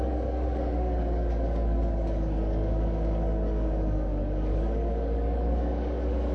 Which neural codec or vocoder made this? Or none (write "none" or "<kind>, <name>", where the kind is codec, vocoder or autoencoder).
codec, DAC